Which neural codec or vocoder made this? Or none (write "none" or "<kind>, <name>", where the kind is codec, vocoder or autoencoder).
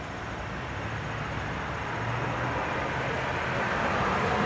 none